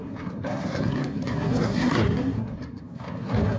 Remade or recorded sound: remade